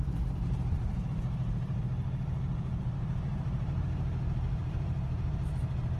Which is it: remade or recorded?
remade